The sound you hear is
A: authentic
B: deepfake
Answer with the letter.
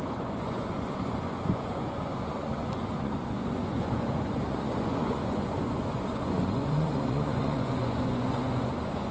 B